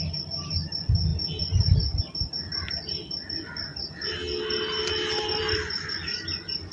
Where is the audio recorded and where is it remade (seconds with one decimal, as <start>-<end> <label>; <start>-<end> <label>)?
0.0-6.7 recorded